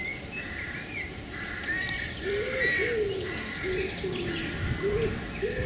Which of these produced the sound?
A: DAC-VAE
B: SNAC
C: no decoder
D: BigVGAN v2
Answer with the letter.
C